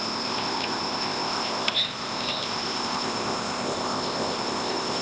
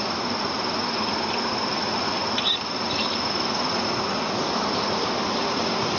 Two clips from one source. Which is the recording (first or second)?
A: second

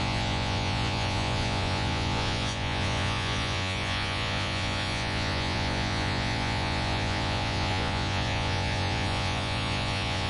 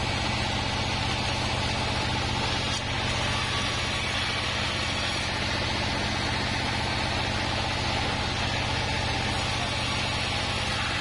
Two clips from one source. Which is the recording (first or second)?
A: second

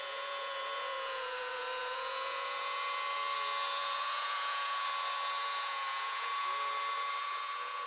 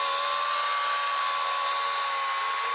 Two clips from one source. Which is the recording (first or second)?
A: second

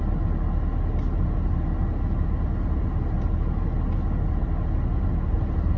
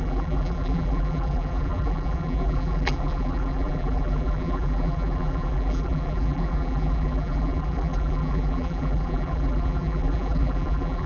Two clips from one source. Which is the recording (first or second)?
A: first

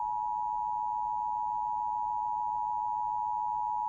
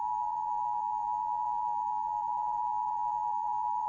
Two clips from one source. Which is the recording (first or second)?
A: first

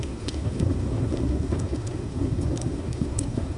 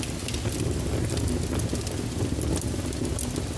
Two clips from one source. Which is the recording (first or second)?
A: second